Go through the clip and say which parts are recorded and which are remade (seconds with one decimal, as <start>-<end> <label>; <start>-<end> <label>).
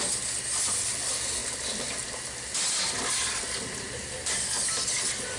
0.0-5.4 recorded